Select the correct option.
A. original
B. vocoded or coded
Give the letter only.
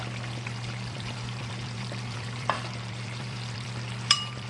B